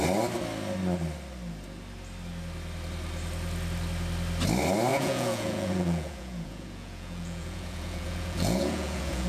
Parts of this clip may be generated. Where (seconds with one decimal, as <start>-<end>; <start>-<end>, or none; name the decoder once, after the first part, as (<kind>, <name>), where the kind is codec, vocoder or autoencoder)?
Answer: 4.9-9.3 (vocoder, Vocos)